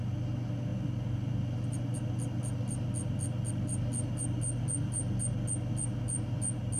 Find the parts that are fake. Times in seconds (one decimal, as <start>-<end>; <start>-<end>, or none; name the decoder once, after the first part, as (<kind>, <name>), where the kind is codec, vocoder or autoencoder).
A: none